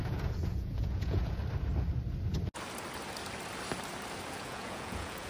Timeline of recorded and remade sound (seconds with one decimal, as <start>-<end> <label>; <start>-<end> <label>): 0.0-1.4 remade; 1.4-4.3 recorded; 4.3-5.3 remade